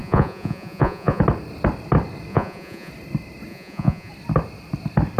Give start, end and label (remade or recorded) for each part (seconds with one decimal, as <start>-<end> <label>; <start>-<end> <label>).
0.0-1.2 remade; 1.2-2.3 recorded; 2.3-2.9 remade; 2.9-3.5 recorded; 3.5-4.1 remade; 4.1-5.2 recorded

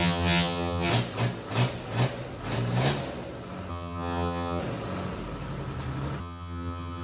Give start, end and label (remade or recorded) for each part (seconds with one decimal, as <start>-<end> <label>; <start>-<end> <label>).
0.0-0.9 remade; 0.9-3.7 recorded; 3.7-4.6 remade; 4.6-6.2 recorded; 6.2-7.0 remade

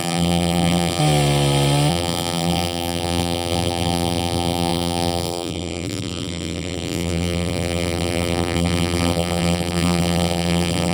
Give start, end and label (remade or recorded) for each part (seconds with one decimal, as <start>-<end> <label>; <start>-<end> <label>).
0.0-1.0 remade; 1.0-1.9 recorded; 1.9-10.9 remade

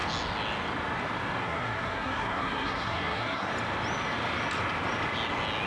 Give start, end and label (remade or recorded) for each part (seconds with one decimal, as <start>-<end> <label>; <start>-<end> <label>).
0.0-1.4 recorded; 1.4-3.5 remade; 3.5-5.7 recorded